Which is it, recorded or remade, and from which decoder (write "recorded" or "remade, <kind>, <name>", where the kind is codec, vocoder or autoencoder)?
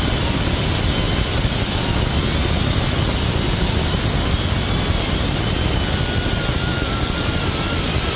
recorded